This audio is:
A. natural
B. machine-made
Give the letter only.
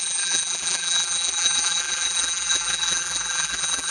B